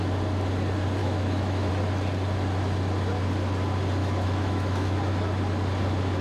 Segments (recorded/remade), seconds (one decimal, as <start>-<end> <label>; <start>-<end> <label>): 0.0-1.0 recorded; 1.0-1.7 remade; 1.7-4.0 recorded; 4.0-5.1 remade; 5.1-6.2 recorded